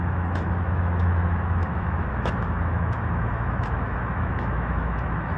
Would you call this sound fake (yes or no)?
yes